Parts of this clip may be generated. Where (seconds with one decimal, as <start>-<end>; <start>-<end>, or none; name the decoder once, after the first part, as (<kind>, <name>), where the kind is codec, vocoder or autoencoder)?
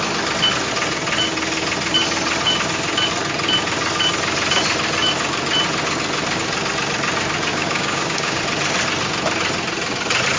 7.5-8.4 (codec, DAC)